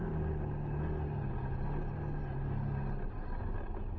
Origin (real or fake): real